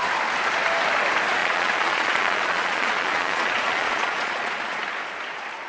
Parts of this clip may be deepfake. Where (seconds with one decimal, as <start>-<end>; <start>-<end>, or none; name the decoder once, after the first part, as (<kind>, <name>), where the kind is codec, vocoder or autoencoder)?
1.4-4.8 (vocoder, Vocos)